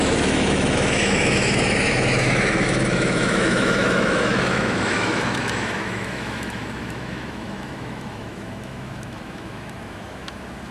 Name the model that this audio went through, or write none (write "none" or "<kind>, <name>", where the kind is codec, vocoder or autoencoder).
autoencoder, DAC-VAE